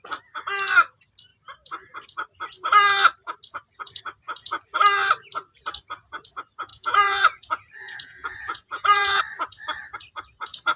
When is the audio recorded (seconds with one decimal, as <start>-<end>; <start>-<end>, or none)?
0.0-6.7; 9.2-10.8